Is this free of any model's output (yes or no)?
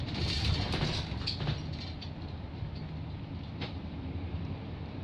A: no